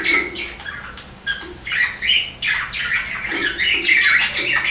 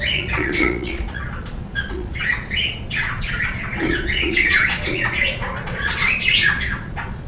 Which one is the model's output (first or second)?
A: second